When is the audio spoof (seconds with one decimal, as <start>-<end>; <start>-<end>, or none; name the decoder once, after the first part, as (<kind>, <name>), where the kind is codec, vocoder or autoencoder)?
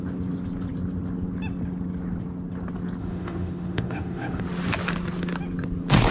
3.0-4.4 (autoencoder, DAC-VAE)